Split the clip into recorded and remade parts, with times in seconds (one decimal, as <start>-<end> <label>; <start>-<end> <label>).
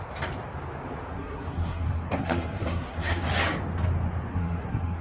0.0-1.1 recorded; 1.1-3.2 remade; 3.2-4.3 recorded; 4.3-5.0 remade